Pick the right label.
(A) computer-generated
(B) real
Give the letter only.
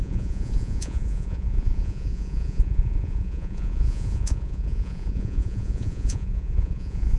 A